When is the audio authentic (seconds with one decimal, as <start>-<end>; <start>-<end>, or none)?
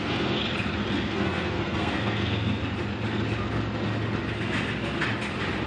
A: 0.4-0.9; 2.6-5.7